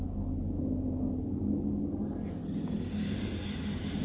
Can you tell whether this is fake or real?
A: real